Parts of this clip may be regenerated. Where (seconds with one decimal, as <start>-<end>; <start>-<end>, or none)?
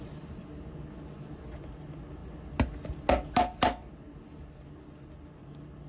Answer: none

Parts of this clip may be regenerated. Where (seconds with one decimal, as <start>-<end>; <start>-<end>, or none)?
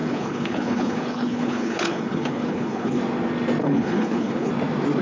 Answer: 0.0-3.0; 3.6-4.5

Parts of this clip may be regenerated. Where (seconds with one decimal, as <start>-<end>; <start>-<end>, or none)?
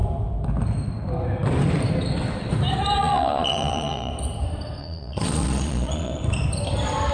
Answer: 3.0-4.1; 4.8-6.2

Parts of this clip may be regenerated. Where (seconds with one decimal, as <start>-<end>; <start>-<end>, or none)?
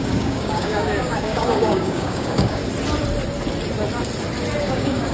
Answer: 0.0-2.6; 4.6-5.1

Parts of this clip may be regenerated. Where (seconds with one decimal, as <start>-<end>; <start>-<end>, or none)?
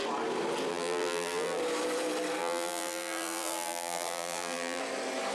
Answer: 0.7-1.6; 2.4-4.8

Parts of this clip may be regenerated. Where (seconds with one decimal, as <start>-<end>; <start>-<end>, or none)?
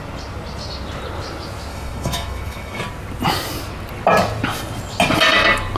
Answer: 1.7-2.8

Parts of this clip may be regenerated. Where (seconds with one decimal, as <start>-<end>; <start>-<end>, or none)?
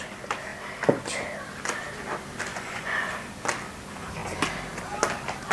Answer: 2.5-3.1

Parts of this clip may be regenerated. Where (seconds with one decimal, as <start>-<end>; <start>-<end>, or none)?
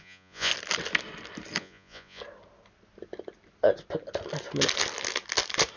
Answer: 0.0-0.5; 1.6-2.2